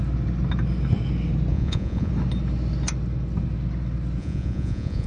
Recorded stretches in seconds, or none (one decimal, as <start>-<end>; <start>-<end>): 0.0-1.5; 2.1-4.2